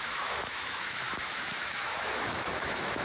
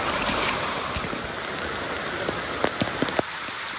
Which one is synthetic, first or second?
first